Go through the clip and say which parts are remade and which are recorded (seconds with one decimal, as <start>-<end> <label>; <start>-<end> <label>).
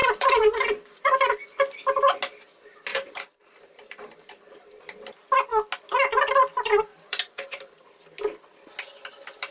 0.0-1.3 remade; 1.3-2.9 recorded; 2.9-4.7 remade; 4.7-6.9 recorded; 6.9-7.8 remade; 7.8-9.5 recorded